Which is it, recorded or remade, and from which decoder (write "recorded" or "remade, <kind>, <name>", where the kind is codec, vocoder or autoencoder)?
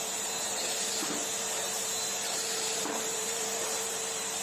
remade, vocoder, BigVGAN v2